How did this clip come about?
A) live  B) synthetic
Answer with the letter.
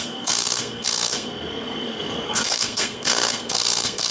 B